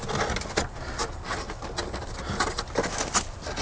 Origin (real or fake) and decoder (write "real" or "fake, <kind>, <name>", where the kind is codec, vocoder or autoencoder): real